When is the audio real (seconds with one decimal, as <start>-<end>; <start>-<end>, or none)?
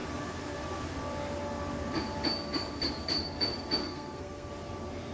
0.0-3.8; 4.5-5.1